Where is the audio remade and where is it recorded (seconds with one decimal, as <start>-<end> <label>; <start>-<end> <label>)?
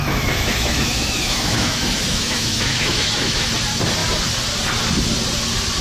0.0-3.5 remade; 3.5-5.8 recorded